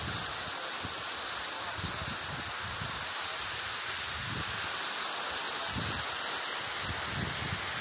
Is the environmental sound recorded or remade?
recorded